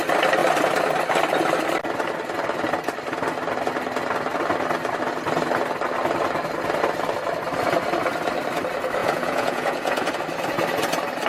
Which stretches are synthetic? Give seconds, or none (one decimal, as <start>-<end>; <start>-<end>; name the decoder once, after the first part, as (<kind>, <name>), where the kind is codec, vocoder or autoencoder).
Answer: 9.0-10.1 (vocoder, Vocos)